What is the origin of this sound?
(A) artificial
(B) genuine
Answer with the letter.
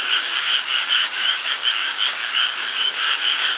A